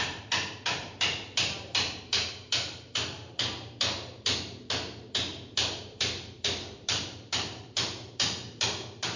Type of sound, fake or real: fake